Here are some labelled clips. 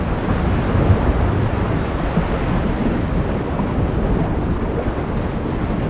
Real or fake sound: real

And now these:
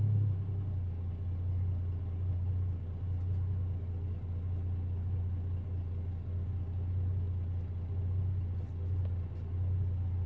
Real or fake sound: real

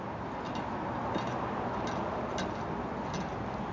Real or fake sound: real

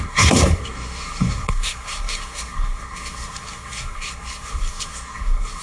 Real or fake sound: fake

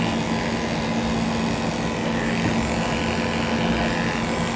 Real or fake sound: real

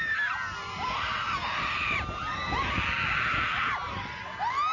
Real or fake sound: real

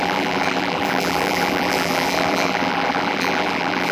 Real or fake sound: fake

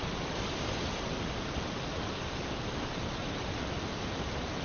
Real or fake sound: fake